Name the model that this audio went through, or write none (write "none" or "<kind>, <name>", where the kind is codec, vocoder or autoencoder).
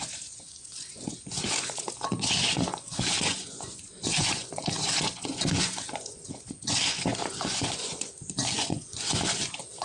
vocoder, Vocos